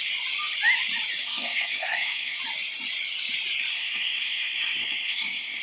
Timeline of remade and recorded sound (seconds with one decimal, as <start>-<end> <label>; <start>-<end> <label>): 0.0-1.2 recorded; 1.2-2.4 remade; 2.4-3.7 recorded; 3.7-5.6 remade